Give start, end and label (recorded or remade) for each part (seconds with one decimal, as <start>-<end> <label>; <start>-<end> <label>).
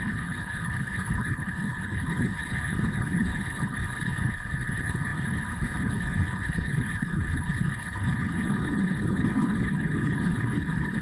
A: 0.0-11.0 remade